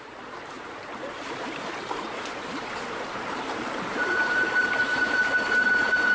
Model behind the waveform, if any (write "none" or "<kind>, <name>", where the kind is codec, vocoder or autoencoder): vocoder, BigVGAN v2